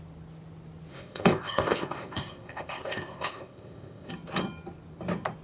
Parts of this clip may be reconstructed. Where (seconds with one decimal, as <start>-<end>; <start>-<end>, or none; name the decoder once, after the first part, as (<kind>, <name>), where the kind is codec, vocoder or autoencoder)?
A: 0.9-4.1 (codec, ZipCodec)